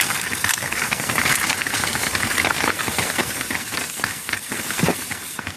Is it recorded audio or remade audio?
remade